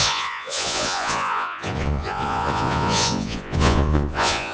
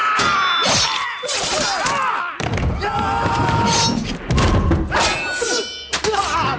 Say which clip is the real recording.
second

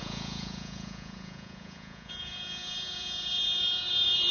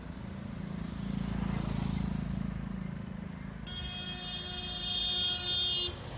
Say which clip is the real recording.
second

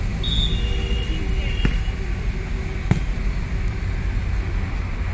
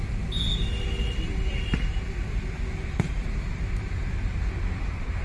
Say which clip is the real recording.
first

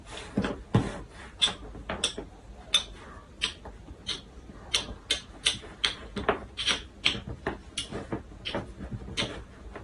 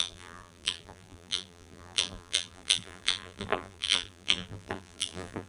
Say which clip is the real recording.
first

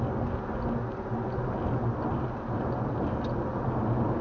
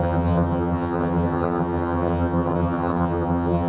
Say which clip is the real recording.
first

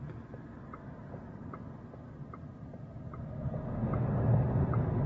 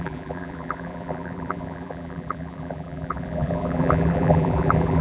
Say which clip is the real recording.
first